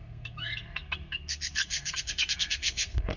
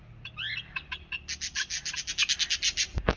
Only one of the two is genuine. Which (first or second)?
second